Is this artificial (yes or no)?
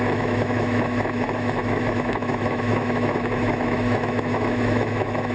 yes